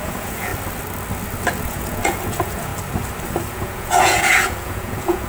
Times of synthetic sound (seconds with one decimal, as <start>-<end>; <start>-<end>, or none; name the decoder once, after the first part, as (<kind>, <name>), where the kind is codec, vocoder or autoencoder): 0.0-0.5 (vocoder, Vocos); 1.6-2.7; 3.5-5.3